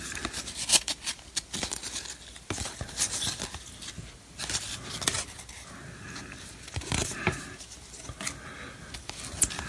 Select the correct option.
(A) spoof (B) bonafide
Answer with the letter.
B